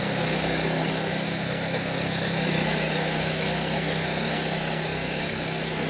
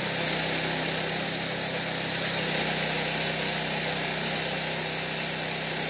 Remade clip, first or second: first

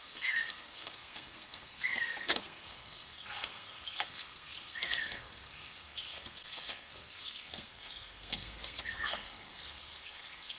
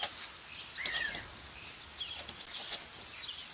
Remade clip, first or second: first